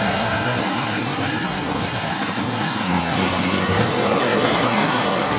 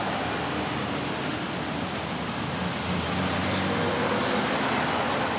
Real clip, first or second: second